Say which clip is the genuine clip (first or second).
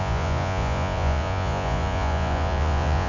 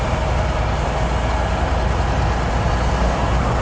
second